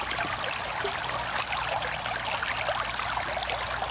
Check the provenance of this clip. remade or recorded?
recorded